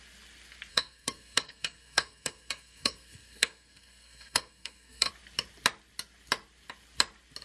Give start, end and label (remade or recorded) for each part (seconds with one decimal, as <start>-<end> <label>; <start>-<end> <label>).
0.0-0.7 recorded; 0.7-5.1 remade; 5.1-7.4 recorded